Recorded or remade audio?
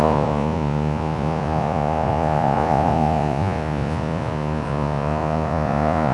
remade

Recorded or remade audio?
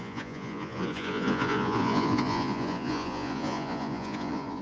remade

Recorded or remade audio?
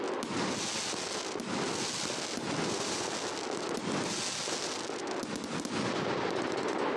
recorded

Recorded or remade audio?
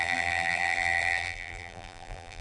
remade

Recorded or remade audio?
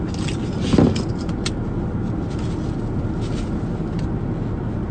recorded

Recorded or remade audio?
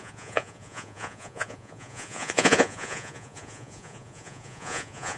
remade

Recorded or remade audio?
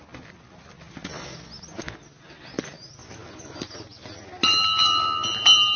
recorded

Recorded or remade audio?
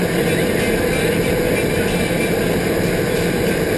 recorded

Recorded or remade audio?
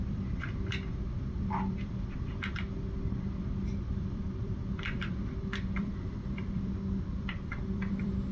remade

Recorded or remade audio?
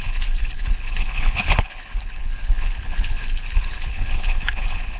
remade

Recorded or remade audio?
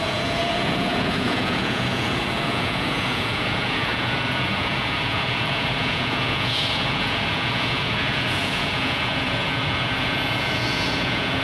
remade